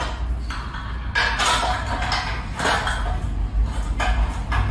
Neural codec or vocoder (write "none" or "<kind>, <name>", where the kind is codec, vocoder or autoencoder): none